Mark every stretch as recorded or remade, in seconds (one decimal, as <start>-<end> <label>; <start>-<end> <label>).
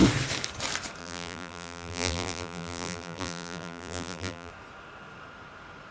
0.0-1.0 recorded; 1.0-4.5 remade; 4.5-5.9 recorded